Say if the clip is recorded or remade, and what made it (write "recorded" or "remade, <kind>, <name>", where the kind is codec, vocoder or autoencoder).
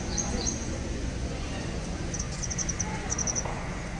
remade, vocoder, Vocos